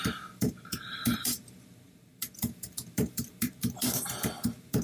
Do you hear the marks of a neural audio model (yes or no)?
yes